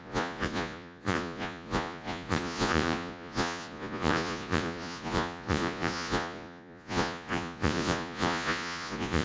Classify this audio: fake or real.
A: fake